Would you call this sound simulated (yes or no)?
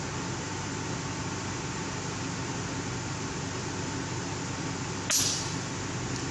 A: no